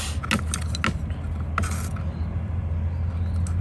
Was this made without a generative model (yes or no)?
yes